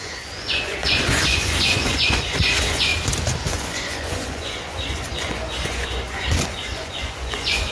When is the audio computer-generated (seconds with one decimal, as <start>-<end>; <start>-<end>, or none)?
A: 0.0-2.9; 3.5-7.7